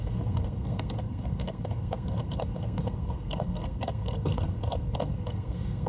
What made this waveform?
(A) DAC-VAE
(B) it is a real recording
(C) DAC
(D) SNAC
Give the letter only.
D